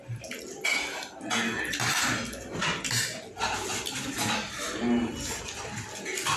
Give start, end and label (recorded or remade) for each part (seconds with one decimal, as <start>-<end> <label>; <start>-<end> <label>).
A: 0.0-6.4 recorded